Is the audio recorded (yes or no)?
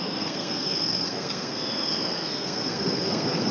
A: no